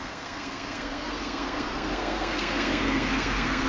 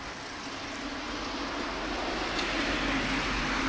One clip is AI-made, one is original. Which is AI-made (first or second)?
first